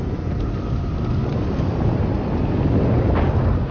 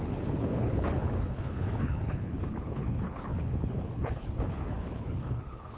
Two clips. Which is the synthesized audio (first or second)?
second